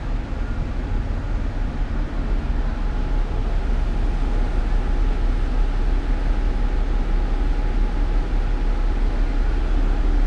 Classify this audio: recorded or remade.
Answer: recorded